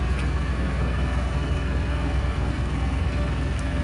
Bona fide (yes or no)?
no